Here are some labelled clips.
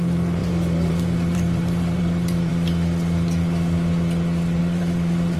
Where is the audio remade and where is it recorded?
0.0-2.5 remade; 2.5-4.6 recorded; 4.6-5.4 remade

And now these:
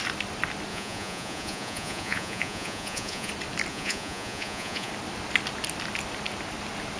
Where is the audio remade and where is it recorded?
0.0-0.7 recorded; 0.7-3.3 remade; 3.3-3.7 recorded; 3.7-4.9 remade; 4.9-7.0 recorded

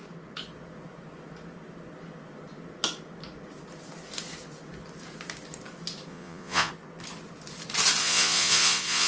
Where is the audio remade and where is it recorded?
0.0-6.1 recorded; 6.1-6.7 remade; 6.7-8.0 recorded; 8.0-9.1 remade

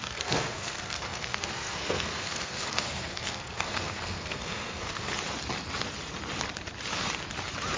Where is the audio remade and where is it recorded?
0.0-5.1 remade; 5.1-7.8 recorded

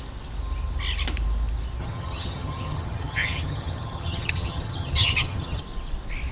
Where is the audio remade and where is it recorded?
0.0-1.8 recorded; 1.8-5.6 remade; 5.6-6.3 recorded